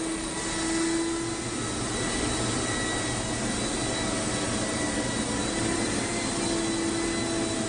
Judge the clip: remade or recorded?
recorded